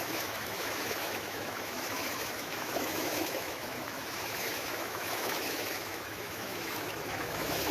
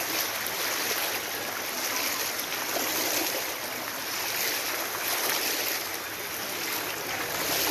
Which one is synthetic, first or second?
first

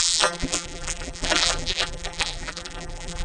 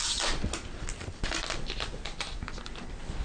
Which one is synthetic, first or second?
first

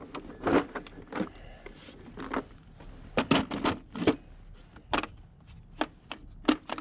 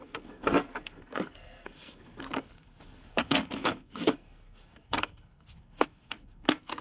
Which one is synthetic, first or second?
second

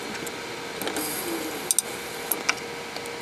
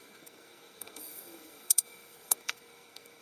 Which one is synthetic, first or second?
second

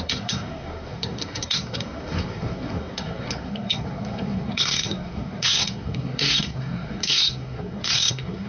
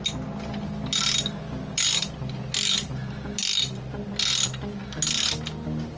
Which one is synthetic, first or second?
first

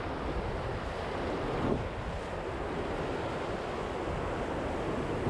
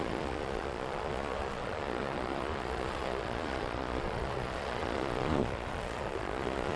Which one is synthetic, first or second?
second